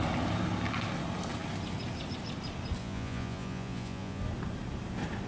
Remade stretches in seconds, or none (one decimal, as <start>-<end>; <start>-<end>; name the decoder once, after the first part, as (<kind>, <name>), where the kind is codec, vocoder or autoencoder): 2.8-4.2 (vocoder, Vocos)